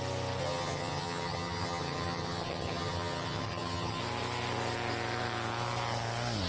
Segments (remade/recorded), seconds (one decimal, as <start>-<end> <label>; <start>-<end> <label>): 0.0-0.4 recorded; 0.4-4.0 remade; 4.0-6.5 recorded